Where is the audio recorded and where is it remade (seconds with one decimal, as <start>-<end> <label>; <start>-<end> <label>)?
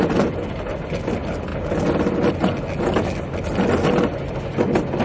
0.0-5.0 recorded